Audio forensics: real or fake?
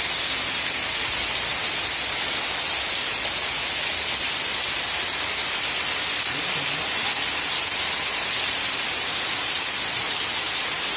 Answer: real